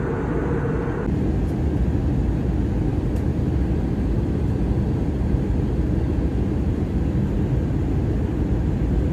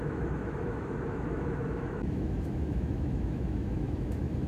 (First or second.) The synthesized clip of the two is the second